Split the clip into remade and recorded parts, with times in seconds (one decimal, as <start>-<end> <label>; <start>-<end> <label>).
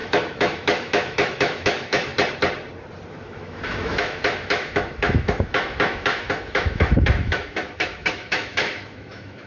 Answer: 0.0-2.1 remade; 2.1-3.1 recorded; 3.1-9.5 remade